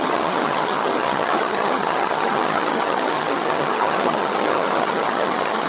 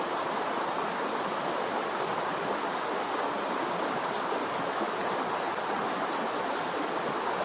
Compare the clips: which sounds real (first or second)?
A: second